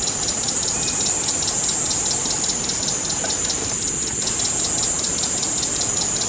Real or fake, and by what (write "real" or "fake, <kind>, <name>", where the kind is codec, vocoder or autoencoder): real